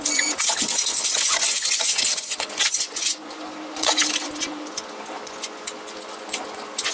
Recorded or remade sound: remade